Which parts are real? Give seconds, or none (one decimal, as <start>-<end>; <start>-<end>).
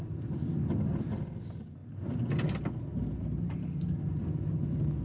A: 0.0-5.0